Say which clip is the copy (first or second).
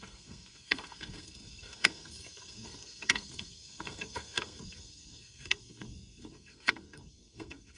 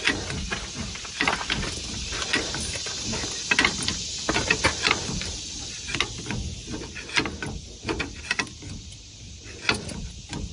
first